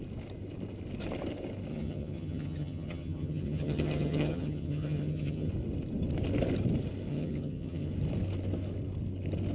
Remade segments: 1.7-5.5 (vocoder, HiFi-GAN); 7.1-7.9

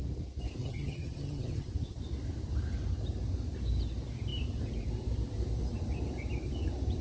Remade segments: 0.6-1.7 (vocoder, HiFi-GAN)

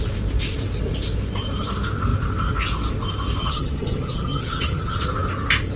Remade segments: 3.4-5.0 (vocoder, HiFi-GAN)

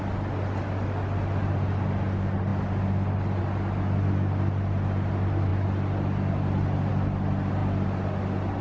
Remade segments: none

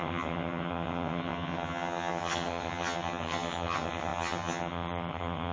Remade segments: 0.0-5.5 (vocoder, HiFi-GAN)

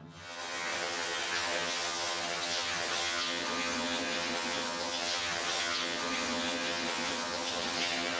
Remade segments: 0.0-8.2 (vocoder, HiFi-GAN)

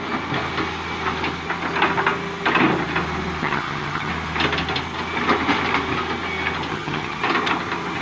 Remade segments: 3.4-4.1 (vocoder, HiFi-GAN); 6.7-7.2

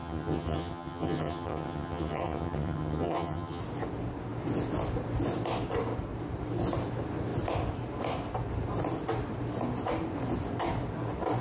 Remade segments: 0.0-3.6 (vocoder, HiFi-GAN)